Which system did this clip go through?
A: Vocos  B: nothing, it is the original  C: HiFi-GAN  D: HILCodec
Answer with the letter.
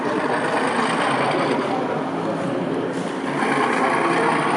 B